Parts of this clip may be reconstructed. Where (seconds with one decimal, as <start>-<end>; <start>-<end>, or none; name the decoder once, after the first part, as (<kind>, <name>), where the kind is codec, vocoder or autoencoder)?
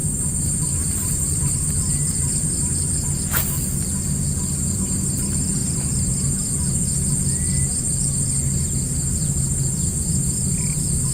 0.0-2.9 (vocoder, BigVGAN v2)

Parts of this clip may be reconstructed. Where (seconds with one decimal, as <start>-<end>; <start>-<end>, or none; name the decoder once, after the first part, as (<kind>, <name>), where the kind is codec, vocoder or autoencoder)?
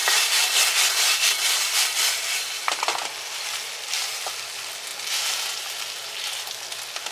0.0-4.3 (vocoder, BigVGAN v2)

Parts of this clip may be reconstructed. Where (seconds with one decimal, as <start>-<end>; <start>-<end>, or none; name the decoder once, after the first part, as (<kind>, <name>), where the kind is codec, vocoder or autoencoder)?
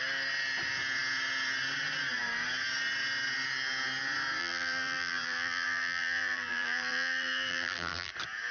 4.4-8.1 (vocoder, BigVGAN v2)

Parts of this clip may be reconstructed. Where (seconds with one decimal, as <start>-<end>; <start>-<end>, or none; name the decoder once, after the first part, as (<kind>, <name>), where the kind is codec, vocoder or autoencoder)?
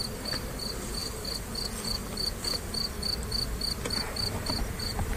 none